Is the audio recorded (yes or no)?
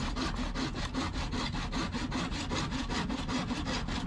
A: yes